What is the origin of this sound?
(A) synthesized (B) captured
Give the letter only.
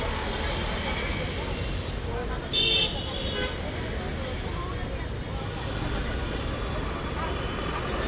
B